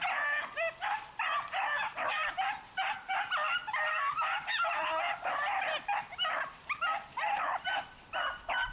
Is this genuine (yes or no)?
yes